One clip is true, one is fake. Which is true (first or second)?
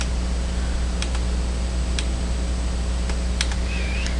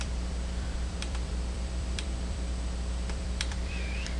first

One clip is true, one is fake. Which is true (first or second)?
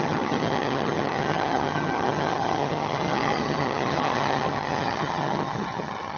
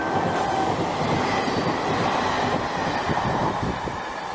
second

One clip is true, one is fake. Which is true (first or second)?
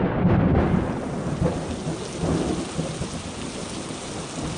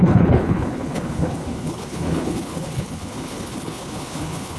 first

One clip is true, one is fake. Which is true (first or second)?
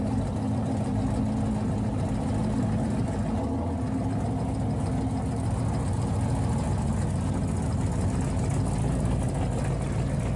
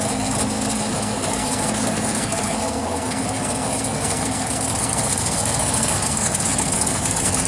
first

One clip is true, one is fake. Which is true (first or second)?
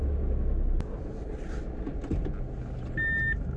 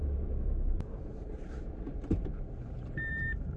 first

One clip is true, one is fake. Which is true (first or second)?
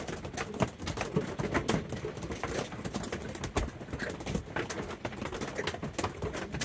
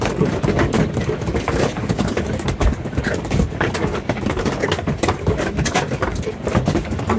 first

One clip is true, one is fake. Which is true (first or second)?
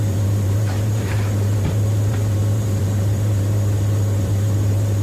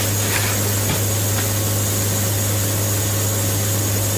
second